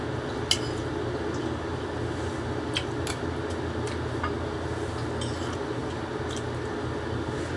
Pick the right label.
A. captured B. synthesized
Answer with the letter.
A